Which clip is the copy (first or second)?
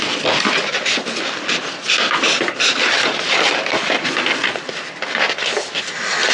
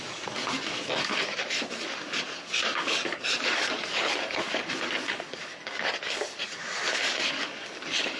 second